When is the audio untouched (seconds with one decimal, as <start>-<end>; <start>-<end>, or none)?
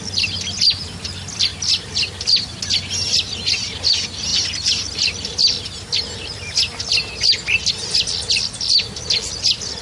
0.0-9.8